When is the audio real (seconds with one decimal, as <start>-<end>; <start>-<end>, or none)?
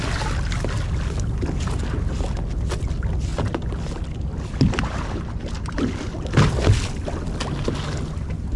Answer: 0.0-8.6